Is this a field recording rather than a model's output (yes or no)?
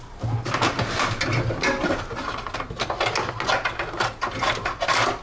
yes